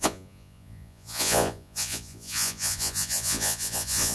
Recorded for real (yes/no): no